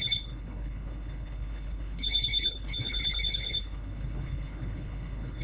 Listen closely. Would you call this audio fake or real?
fake